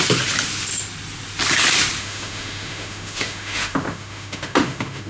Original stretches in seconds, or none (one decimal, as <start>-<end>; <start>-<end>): 0.0-2.0